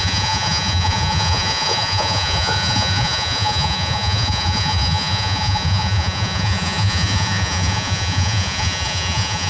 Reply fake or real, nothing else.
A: fake